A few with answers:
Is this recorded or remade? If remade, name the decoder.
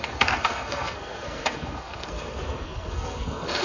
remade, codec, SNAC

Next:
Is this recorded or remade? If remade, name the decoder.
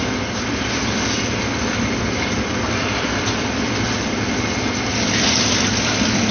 recorded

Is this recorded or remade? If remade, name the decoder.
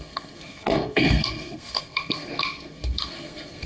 remade, codec, SNAC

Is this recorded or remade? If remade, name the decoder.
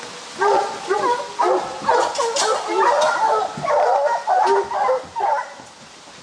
recorded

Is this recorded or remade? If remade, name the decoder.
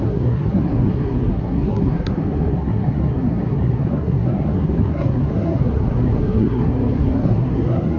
remade, codec, SNAC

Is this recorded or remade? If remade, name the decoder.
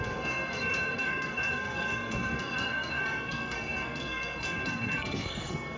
remade, codec, SNAC